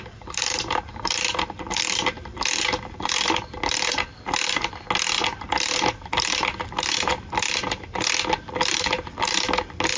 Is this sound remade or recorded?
recorded